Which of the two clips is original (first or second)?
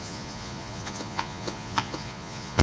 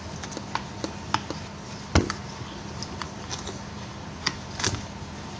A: second